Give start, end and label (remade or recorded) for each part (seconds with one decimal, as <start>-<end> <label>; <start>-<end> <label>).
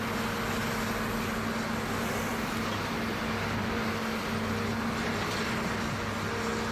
0.0-6.7 recorded